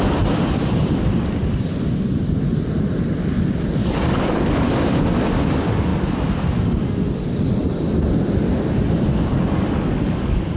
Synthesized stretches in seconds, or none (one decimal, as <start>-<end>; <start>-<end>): 3.8-5.0; 9.3-10.6